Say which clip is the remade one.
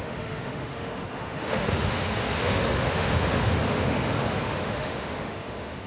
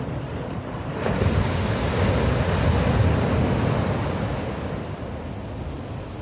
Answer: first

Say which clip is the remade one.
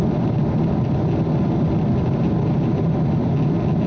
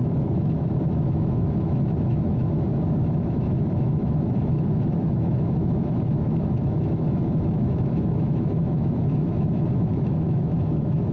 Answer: second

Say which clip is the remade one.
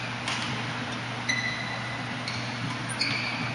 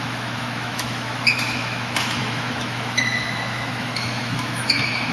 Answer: second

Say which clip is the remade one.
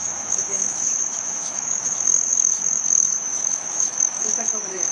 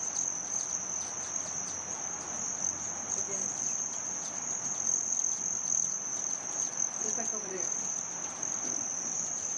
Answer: first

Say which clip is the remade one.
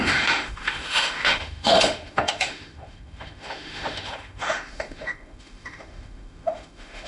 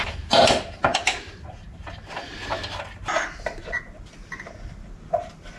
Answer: first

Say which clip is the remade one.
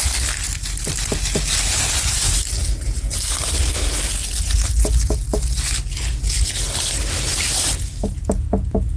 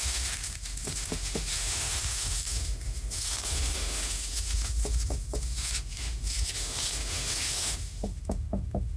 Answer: second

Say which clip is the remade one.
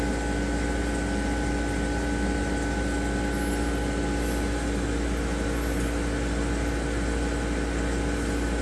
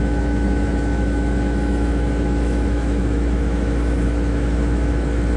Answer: second